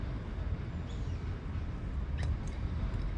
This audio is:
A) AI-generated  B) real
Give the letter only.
B